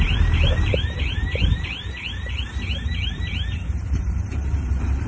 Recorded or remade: remade